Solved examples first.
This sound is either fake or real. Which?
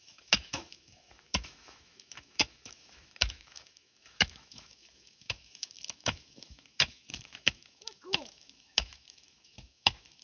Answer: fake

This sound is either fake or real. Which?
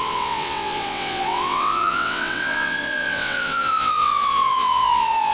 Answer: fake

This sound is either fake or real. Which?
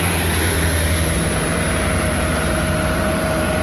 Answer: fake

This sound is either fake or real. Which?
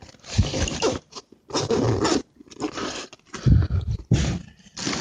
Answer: real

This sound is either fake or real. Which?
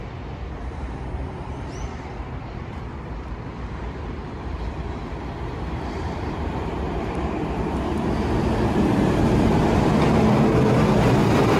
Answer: fake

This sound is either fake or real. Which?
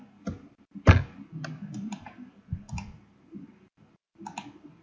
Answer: real